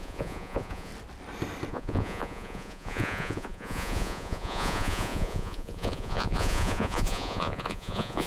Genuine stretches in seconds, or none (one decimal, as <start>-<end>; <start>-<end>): 0.9-1.7